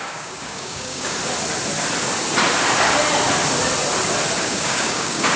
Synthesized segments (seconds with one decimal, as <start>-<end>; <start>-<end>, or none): 0.0-1.2; 4.4-5.4